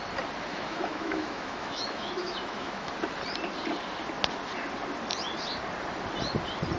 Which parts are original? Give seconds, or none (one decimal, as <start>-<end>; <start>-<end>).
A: 0.0-0.5; 2.9-6.8